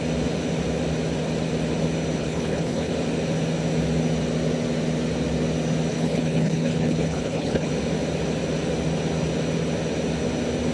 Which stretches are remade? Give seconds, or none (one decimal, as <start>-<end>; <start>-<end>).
2.2-2.9; 5.9-7.7